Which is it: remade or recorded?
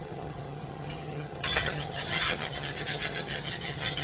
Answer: remade